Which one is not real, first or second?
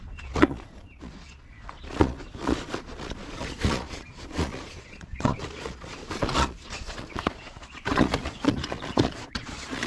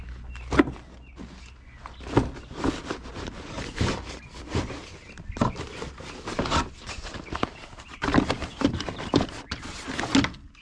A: first